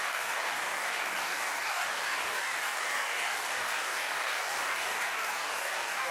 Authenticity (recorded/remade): remade